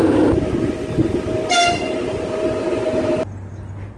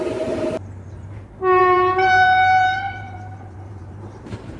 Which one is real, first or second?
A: first